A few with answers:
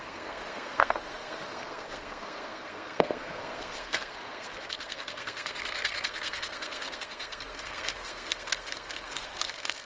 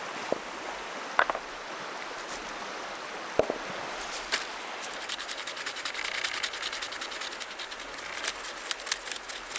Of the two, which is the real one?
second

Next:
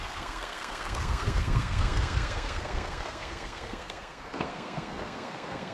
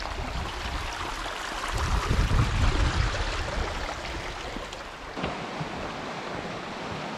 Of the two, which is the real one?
second